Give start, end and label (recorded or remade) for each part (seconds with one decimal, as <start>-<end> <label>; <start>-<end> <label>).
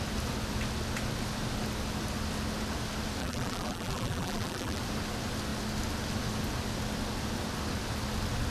0.0-3.2 recorded; 3.2-4.8 remade; 4.8-8.5 recorded